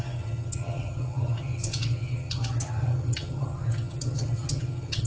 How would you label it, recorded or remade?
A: remade